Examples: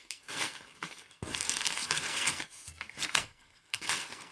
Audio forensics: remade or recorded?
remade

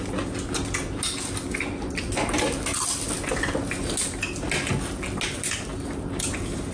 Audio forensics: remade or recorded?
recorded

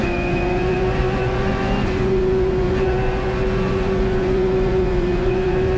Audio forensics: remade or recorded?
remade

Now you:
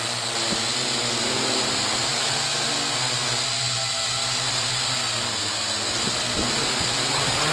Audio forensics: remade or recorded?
recorded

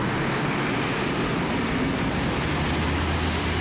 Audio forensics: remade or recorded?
recorded